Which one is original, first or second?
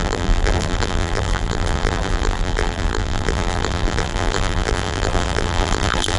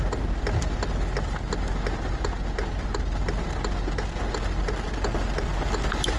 second